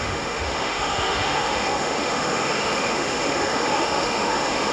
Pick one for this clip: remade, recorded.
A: remade